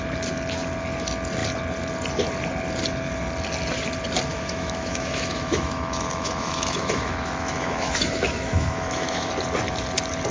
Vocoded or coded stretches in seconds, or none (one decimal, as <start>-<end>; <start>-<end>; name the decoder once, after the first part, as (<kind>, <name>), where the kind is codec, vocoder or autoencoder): 4.3-9.3 (autoencoder, DAC-VAE)